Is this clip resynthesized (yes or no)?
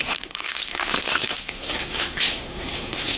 yes